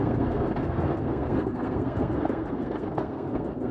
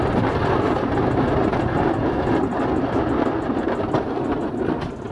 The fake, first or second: first